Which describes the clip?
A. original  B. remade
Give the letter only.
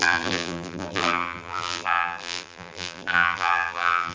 B